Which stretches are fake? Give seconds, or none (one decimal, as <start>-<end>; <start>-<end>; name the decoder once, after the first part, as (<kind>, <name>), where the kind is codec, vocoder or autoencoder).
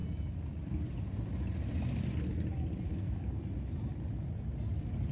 2.9-3.4 (codec, SNAC)